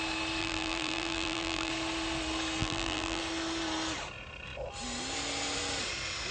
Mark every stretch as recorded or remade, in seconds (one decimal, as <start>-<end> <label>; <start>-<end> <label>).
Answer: 0.0-0.4 recorded; 0.4-1.7 remade; 1.7-2.6 recorded; 2.6-3.2 remade; 3.2-6.3 recorded